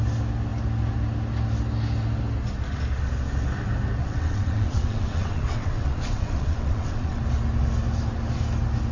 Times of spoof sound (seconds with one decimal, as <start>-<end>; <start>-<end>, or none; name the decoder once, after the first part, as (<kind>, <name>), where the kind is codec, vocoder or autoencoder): 4.0-7.2 (vocoder, WaveNeXt)